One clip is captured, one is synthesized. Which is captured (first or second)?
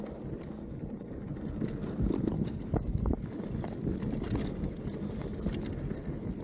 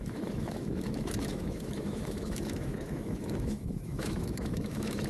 first